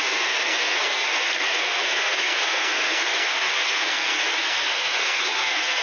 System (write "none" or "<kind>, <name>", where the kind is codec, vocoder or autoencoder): codec, SNAC